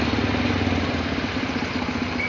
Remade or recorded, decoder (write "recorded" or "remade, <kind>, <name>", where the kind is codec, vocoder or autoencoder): recorded